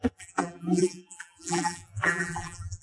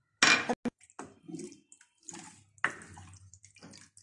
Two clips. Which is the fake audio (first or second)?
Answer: first